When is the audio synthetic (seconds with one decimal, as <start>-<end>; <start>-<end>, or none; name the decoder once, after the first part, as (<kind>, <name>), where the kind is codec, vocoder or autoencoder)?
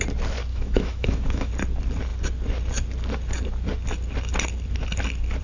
0.5-1.5 (autoencoder, DAC-VAE)